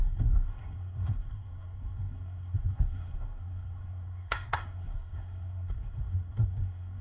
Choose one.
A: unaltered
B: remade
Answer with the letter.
B